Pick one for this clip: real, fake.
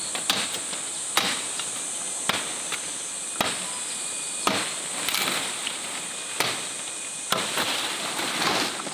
real